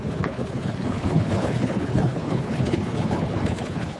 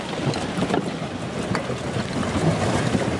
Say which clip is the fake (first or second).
first